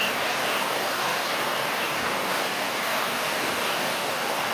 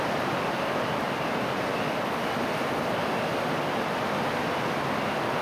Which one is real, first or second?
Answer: second